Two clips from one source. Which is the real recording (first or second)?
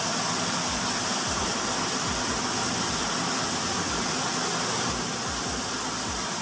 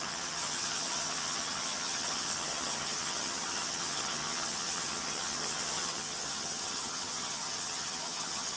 first